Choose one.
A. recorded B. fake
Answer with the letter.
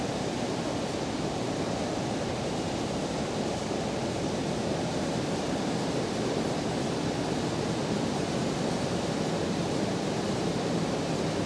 A